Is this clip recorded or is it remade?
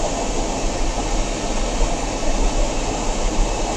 recorded